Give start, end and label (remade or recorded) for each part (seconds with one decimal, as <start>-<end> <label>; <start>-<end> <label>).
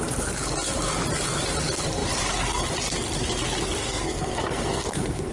0.0-3.8 recorded; 3.8-5.3 remade